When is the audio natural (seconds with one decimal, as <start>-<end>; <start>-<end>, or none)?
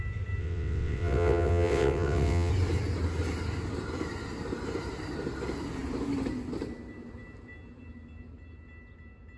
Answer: 0.0-0.4; 2.5-9.4